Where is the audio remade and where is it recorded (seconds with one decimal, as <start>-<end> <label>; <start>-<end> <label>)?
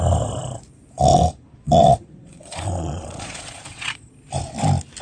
0.0-1.1 recorded; 1.1-4.1 remade; 4.1-5.0 recorded